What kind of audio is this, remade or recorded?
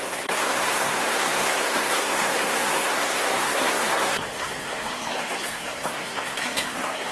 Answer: remade